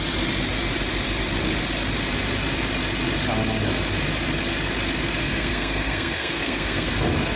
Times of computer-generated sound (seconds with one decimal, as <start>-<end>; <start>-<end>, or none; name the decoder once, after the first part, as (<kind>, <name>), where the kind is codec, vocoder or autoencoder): 5.2-6.9 (codec, SNAC)